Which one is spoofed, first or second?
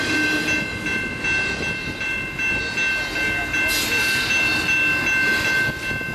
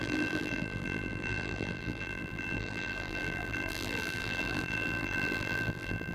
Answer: second